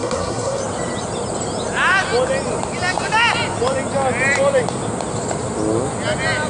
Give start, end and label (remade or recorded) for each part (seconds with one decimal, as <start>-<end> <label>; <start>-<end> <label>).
0.0-0.6 remade; 0.6-6.5 recorded